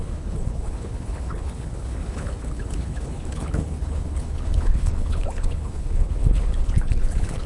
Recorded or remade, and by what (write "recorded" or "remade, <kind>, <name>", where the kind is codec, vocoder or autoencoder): remade, codec, HILCodec